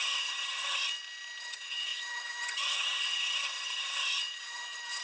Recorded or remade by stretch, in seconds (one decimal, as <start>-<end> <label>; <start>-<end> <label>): 0.0-0.9 remade; 0.9-1.4 recorded; 1.4-5.0 remade